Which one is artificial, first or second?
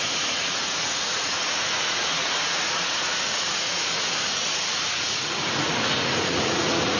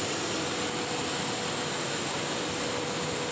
first